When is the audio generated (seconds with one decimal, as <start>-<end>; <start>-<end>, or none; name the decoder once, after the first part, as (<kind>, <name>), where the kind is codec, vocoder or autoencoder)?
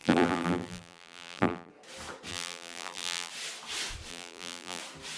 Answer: 0.0-1.7 (vocoder, BigVGAN v2); 2.3-3.3; 4.1-4.8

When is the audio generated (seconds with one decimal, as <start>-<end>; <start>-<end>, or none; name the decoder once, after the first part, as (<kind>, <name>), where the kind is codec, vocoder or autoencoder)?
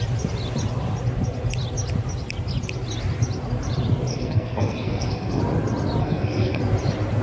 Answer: 4.1-5.4 (codec, SNAC); 6.0-6.6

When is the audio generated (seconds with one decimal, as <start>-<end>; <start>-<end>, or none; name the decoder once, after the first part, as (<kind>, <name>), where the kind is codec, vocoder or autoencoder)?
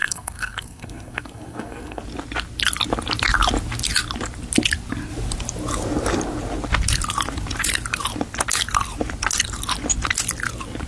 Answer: 0.0-2.0 (codec, SNAC)